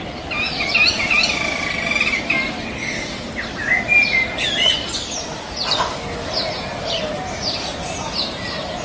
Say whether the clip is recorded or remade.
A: recorded